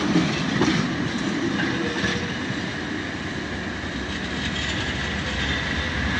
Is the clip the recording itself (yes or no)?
yes